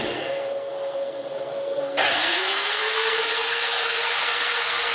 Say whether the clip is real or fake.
fake